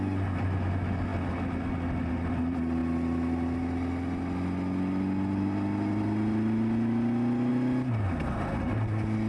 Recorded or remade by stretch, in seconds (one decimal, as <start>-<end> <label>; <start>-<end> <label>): 0.0-9.3 recorded